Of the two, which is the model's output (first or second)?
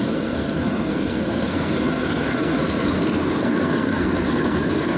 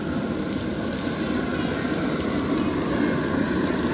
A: first